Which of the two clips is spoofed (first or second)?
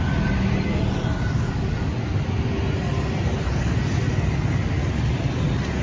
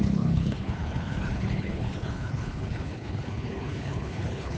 second